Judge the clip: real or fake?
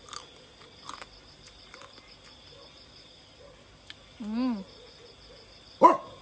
real